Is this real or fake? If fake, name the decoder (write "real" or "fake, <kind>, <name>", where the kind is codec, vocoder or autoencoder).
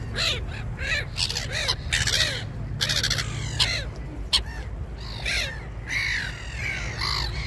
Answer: real